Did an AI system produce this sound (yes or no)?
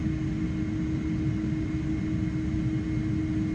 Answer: no